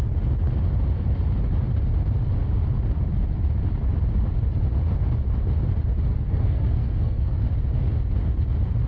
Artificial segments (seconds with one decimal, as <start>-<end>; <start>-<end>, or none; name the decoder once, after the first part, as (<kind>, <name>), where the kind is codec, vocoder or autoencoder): 6.1-7.4 (codec, SNAC)

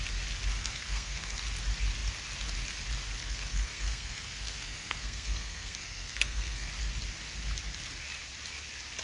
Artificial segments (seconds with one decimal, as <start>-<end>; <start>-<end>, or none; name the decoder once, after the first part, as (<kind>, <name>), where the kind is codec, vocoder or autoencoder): 0.6-1.4 (codec, SNAC); 3.2-6.7

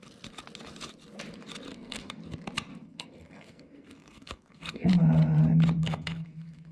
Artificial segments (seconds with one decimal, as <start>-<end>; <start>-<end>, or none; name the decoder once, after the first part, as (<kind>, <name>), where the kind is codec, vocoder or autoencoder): 1.7-2.2 (codec, SNAC); 2.7-4.9; 5.8-6.7